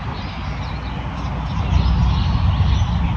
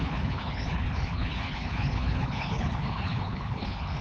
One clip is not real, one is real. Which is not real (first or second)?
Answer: second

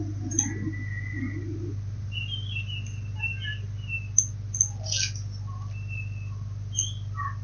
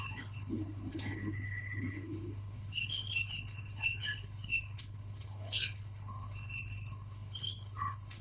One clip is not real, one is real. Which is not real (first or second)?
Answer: second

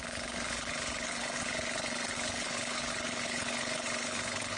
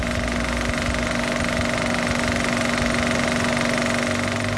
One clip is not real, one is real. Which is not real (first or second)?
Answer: first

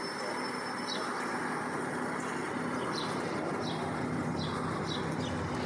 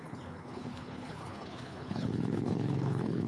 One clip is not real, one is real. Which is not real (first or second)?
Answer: second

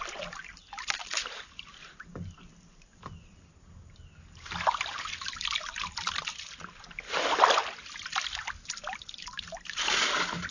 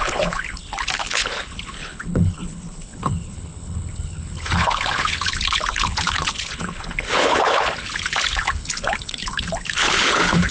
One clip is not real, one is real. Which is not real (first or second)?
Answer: second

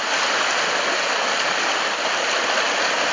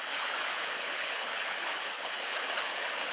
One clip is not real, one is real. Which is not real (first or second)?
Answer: second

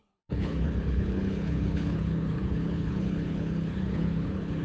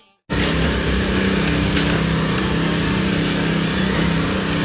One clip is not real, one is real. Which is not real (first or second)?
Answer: first